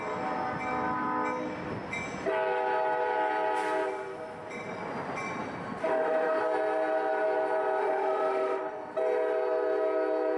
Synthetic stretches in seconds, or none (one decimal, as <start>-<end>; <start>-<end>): 5.8-6.4; 7.8-8.6